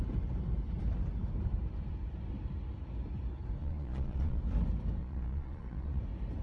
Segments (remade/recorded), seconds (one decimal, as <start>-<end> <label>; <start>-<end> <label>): 0.0-3.6 recorded; 3.6-4.4 remade; 4.4-5.0 recorded; 5.0-6.0 remade; 6.0-6.4 recorded